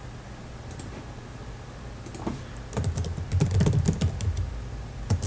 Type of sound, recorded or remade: recorded